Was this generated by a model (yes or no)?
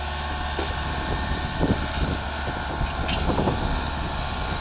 no